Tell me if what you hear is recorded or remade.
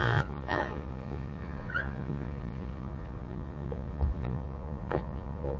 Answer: remade